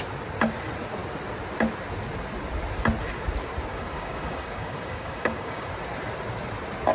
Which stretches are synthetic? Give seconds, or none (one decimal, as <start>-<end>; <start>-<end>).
3.7-5.7